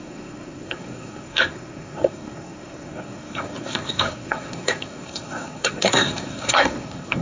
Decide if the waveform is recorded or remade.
remade